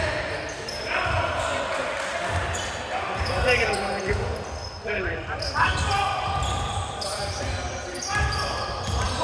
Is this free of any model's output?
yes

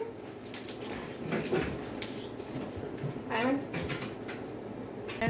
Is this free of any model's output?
yes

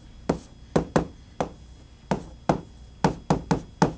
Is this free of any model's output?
yes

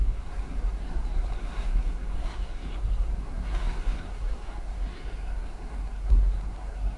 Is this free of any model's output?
no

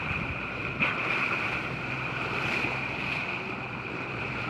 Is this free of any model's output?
no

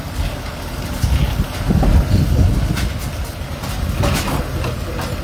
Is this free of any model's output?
yes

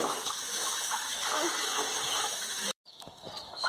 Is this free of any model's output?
no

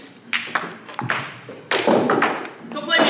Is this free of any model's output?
yes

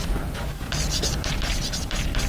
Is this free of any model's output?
yes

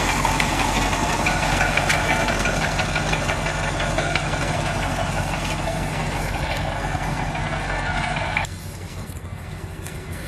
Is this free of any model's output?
no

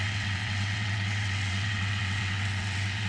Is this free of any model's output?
no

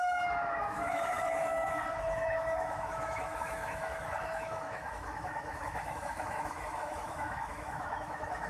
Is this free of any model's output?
no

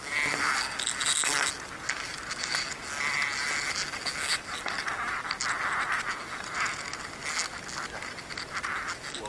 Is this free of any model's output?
yes